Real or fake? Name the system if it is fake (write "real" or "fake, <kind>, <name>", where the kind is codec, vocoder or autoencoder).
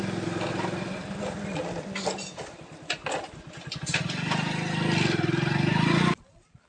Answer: real